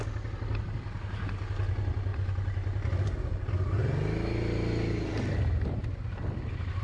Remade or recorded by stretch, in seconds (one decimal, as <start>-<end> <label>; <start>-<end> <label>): 0.0-6.8 recorded